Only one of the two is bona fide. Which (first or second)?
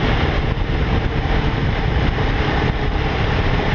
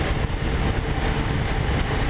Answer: second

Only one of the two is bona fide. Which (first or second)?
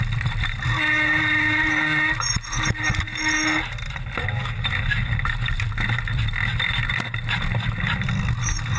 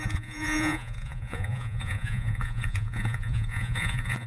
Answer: first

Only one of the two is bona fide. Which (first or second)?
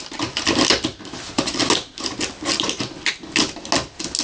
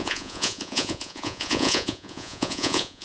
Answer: first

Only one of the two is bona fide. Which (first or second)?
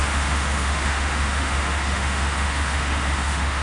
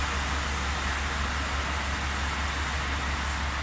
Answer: second